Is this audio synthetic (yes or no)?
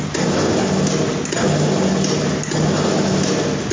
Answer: no